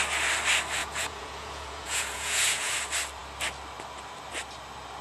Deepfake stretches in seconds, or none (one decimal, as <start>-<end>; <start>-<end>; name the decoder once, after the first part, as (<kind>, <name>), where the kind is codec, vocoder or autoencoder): 0.8-2.7 (vocoder, Vocos)